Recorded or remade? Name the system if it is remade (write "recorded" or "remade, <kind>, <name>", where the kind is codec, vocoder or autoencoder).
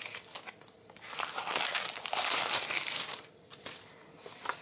remade, vocoder, BigVGAN v2